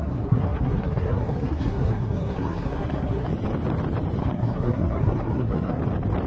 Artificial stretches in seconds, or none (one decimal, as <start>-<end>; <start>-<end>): 0.0-3.3; 4.2-5.8